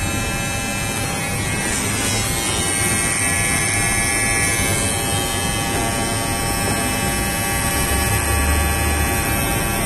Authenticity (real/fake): real